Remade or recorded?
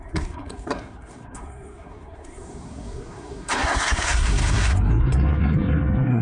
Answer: remade